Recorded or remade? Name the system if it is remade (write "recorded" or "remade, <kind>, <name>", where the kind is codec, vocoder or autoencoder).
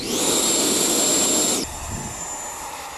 recorded